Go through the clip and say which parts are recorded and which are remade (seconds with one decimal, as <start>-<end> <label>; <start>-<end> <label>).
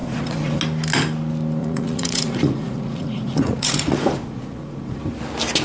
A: 0.0-0.6 remade; 0.6-1.6 recorded; 1.6-5.0 remade; 5.0-5.6 recorded